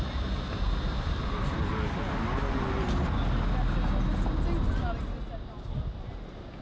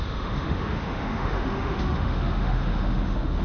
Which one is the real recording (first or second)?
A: first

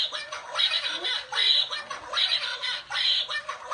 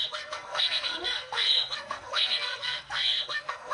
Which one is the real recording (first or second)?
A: first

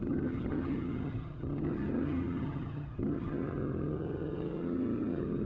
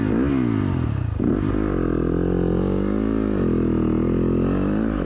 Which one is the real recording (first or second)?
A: second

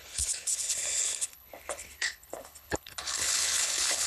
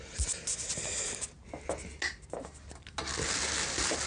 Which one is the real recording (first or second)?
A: second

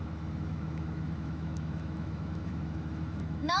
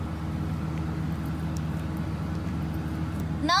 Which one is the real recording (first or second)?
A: second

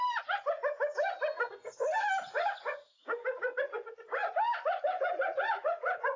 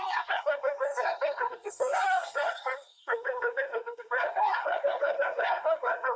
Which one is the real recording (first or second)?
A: first